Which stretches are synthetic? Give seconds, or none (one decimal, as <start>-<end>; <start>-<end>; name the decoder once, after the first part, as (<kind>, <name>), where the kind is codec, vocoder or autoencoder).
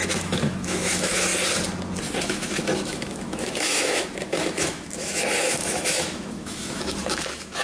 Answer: 0.0-1.3 (autoencoder, DAC-VAE); 2.2-7.6